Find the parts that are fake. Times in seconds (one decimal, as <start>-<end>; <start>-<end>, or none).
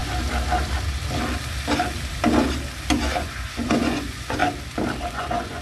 3.2-4.4; 5.1-5.6